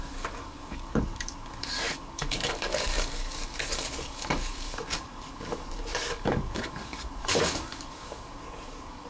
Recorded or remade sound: remade